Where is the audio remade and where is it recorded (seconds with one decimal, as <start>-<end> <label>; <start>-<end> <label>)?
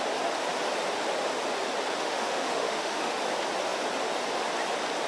0.0-2.0 recorded; 2.0-3.2 remade; 3.2-5.1 recorded